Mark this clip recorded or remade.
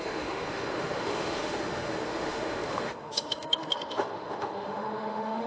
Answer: remade